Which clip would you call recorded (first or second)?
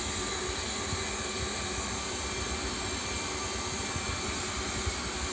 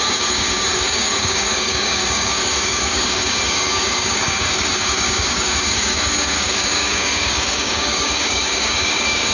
first